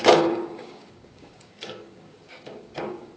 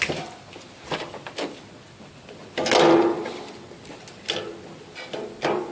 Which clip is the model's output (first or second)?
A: first